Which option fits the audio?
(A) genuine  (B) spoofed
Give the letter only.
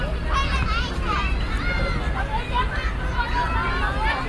A